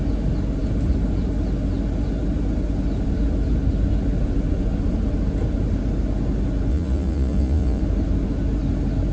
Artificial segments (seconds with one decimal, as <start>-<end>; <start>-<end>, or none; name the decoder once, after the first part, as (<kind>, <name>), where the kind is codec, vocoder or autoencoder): 6.7-7.8 (vocoder, Vocos)